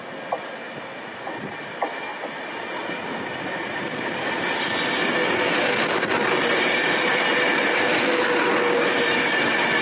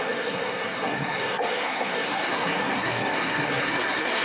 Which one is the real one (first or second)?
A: first